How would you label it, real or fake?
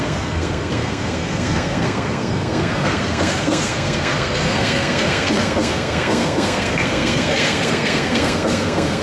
fake